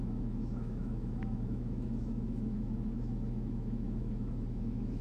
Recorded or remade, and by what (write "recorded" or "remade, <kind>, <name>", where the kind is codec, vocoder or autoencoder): remade, autoencoder, DAC-VAE